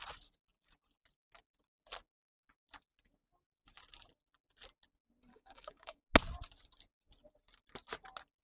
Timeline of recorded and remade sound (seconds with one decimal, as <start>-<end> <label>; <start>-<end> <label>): 0.0-5.3 recorded; 5.3-6.0 remade; 6.0-8.4 recorded